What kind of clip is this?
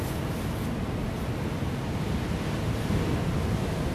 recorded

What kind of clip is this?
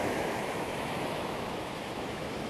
remade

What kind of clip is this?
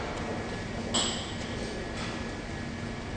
recorded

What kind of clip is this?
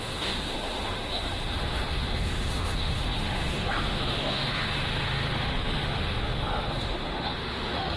remade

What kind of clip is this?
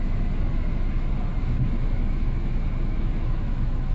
remade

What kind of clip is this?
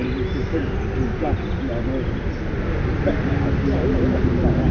recorded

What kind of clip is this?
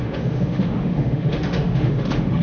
remade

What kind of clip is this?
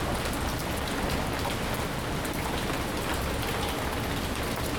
recorded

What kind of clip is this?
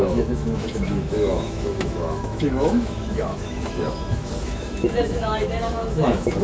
remade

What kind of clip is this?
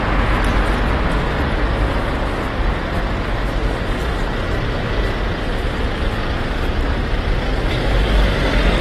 recorded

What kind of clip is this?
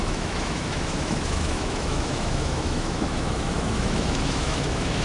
remade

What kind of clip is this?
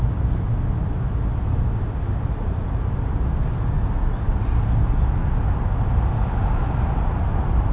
recorded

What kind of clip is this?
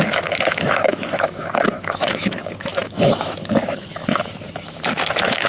remade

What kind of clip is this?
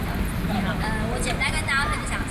recorded